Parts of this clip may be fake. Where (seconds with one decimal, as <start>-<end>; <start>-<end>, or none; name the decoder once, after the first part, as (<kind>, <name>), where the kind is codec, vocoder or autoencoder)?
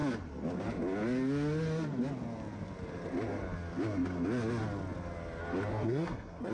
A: 5.7-6.5 (codec, SNAC)